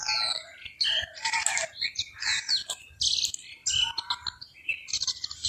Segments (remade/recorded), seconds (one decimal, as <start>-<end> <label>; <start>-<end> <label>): 0.0-5.5 recorded